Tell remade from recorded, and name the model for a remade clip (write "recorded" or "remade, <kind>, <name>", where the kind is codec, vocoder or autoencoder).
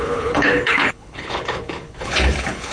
remade, codec, HILCodec